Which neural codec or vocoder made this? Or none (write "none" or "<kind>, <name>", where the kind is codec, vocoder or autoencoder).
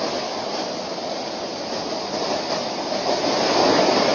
none